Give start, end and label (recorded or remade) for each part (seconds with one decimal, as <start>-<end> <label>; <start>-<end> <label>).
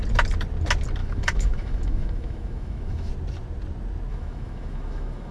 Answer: 0.0-1.0 recorded; 1.0-3.1 remade; 3.1-4.1 recorded; 4.1-5.3 remade